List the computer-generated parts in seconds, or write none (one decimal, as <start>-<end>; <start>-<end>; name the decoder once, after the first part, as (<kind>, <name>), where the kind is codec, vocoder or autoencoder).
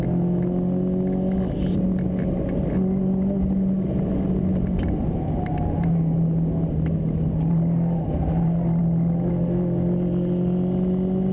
none